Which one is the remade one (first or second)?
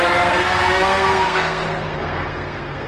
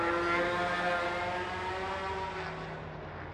first